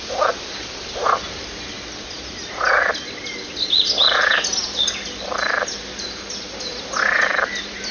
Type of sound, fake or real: real